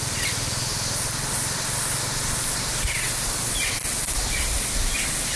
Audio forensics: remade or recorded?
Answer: recorded